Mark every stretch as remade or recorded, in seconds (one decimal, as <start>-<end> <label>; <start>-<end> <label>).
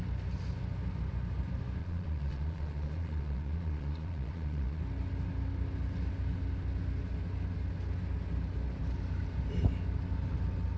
0.0-1.8 recorded; 1.8-4.8 remade; 4.8-10.8 recorded